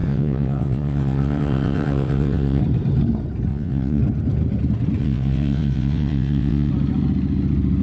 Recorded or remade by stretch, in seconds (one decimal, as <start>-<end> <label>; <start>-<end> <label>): 0.0-2.6 remade; 2.6-3.5 recorded; 3.5-4.0 remade; 4.0-5.0 recorded; 5.0-6.7 remade; 6.7-7.8 recorded

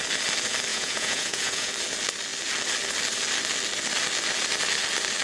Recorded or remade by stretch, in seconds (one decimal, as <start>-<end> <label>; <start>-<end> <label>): 0.0-0.7 recorded; 0.7-1.7 remade; 1.7-5.2 recorded

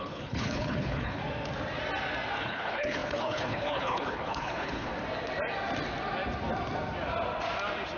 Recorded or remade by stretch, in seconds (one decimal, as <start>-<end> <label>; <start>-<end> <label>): 0.0-1.2 remade; 1.2-2.4 recorded; 2.4-4.9 remade; 4.9-8.0 recorded

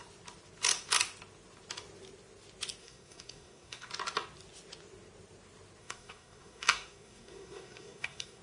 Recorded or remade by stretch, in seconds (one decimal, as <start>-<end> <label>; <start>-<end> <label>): 0.0-2.8 recorded; 2.8-3.9 remade; 3.9-5.8 recorded; 5.8-8.4 remade

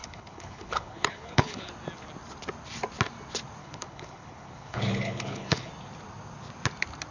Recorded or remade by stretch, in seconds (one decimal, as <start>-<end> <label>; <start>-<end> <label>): 0.0-1.7 remade; 1.7-3.6 recorded; 3.6-5.7 remade; 5.7-7.1 recorded